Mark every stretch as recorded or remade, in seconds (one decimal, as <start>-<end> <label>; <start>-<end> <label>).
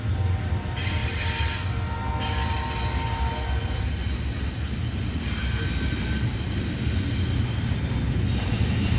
0.0-9.0 recorded